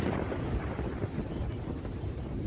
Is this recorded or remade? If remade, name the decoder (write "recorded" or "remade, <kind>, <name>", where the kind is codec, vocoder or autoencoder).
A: remade, vocoder, BigVGAN v2